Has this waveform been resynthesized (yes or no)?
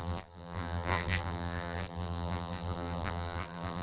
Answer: yes